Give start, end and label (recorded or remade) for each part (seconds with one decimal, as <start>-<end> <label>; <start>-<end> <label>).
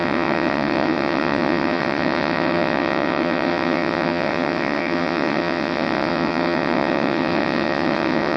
0.0-8.4 remade